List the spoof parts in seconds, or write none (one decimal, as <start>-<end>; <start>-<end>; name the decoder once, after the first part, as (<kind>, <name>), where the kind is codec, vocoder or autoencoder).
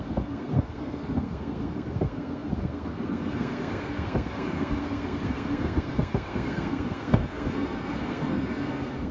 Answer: 0.0-9.1 (codec, SNAC)